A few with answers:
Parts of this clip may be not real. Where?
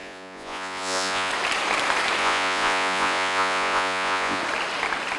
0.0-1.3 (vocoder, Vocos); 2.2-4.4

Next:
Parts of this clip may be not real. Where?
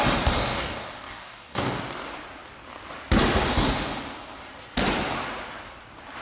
0.5-1.8 (codec, DAC)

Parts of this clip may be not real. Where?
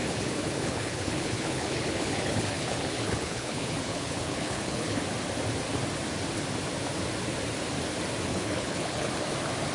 0.0-5.0 (codec, HILCodec); 8.3-9.1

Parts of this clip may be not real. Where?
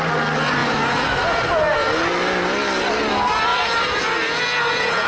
none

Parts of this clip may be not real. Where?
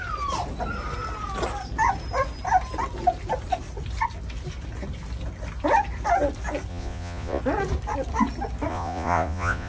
6.7-7.4 (vocoder, Vocos); 8.7-9.7